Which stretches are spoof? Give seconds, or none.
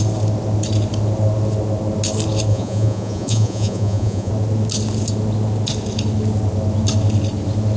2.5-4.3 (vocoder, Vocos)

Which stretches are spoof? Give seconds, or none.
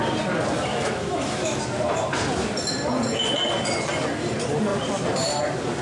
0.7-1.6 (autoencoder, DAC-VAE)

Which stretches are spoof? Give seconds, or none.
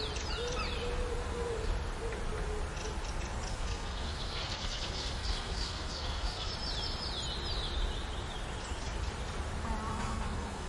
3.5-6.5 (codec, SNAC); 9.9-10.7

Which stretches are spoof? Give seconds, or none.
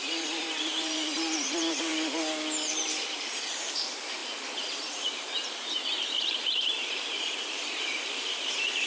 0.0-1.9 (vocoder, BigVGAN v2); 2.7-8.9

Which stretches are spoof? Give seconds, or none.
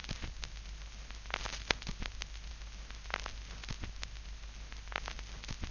none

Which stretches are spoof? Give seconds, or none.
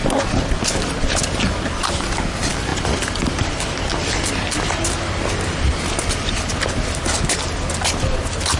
none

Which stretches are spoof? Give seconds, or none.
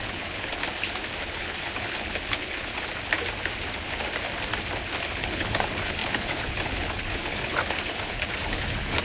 0.0-0.6 (codec, HILCodec); 1.2-2.7; 5.0-9.0